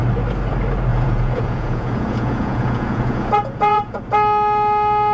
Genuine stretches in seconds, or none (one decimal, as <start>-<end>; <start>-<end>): 0.0-0.9; 4.0-5.1